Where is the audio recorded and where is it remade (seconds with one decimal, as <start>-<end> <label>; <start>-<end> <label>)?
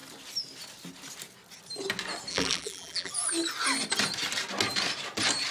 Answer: 0.0-2.3 recorded; 2.3-3.1 remade; 3.1-5.5 recorded